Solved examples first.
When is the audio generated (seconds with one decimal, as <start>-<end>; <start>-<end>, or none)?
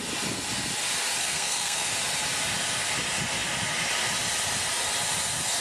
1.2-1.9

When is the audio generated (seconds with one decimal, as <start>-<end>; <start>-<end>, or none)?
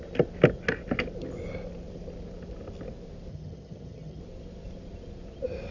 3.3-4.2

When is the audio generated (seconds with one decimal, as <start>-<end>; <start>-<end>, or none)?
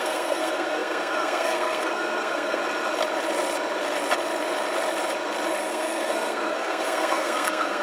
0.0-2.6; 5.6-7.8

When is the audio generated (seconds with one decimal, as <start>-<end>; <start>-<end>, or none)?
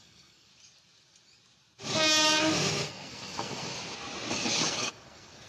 0.0-0.5; 2.4-3.7; 4.3-5.5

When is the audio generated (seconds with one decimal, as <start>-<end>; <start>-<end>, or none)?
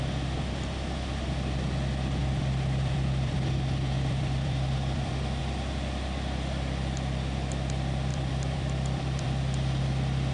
2.2-5.4; 8.1-9.8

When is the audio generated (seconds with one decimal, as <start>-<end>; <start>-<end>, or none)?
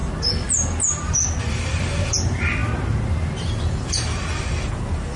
1.4-2.6; 3.7-5.2